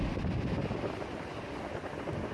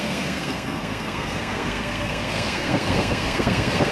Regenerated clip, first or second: second